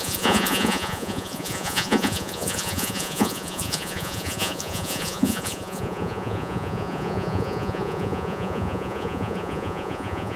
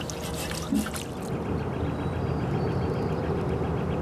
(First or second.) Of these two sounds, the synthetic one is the first